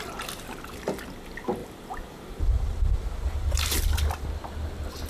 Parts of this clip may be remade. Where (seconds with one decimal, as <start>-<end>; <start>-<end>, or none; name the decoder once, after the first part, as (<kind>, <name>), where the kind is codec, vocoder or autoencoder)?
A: none